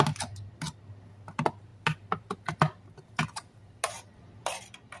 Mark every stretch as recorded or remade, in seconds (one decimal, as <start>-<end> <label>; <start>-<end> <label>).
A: 0.0-5.0 recorded